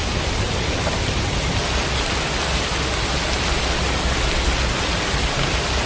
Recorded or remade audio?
recorded